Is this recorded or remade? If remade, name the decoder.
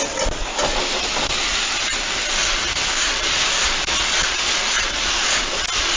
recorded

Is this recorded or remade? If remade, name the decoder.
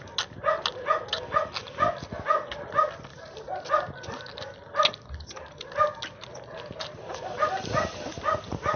recorded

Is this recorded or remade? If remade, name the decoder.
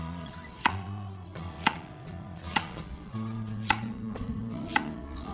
remade, vocoder, Vocos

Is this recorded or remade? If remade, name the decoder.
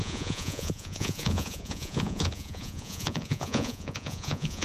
remade, vocoder, Vocos